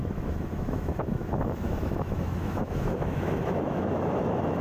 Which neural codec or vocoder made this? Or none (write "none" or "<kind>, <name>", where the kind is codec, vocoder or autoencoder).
autoencoder, DAC-VAE